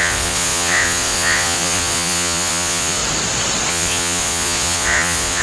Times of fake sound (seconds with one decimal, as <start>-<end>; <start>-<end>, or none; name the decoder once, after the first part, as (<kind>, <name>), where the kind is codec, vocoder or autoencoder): 0.0-3.0 (vocoder, Vocos); 3.7-5.4